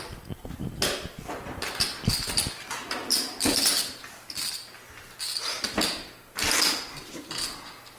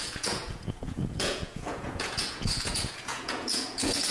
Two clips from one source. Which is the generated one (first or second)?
second